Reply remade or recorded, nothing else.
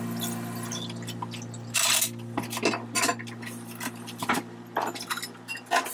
recorded